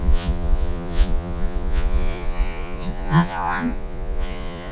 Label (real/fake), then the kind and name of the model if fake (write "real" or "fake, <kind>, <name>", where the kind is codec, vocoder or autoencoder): fake, vocoder, Vocos